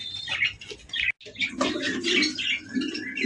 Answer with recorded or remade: recorded